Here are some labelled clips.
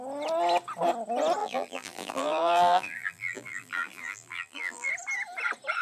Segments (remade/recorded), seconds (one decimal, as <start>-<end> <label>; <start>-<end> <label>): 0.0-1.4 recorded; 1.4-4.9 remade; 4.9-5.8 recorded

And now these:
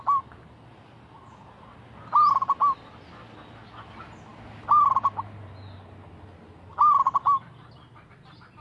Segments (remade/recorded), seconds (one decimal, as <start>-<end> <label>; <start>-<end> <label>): 0.0-8.6 recorded

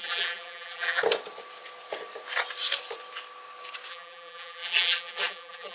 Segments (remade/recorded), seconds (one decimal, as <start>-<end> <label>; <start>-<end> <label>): 0.0-1.0 remade; 1.0-3.9 recorded; 3.9-5.7 remade